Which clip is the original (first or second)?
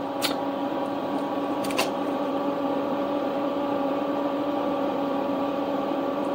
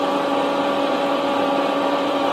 second